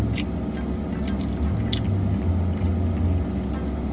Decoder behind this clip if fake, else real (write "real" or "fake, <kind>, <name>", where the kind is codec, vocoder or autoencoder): real